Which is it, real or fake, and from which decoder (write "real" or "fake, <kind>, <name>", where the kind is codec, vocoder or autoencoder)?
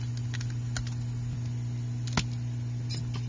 real